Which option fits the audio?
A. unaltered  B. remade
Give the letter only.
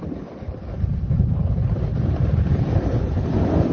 A